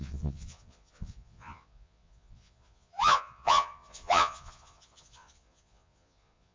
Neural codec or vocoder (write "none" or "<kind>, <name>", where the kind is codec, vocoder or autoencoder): vocoder, Vocos